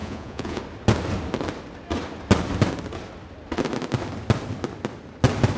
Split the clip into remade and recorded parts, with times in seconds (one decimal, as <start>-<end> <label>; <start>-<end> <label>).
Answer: 0.0-0.6 remade; 0.6-5.6 recorded